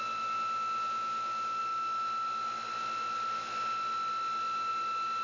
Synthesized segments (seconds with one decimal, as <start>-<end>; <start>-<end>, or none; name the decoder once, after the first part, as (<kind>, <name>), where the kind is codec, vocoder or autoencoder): none